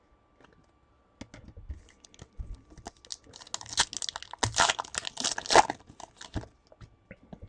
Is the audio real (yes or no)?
yes